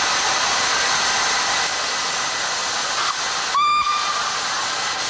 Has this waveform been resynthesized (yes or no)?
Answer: no